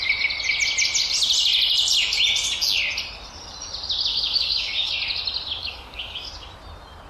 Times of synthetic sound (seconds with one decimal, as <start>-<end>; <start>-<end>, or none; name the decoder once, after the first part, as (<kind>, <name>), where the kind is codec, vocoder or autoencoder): 4.1-4.9 (codec, DAC); 5.6-6.3